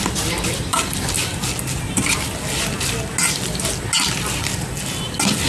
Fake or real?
real